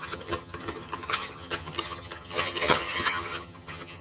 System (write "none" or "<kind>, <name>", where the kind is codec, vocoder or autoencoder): vocoder, HiFi-GAN